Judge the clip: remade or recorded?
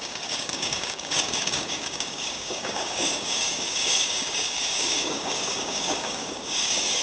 remade